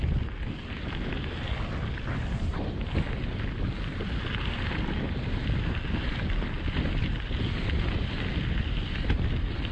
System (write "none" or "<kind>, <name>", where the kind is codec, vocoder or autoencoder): none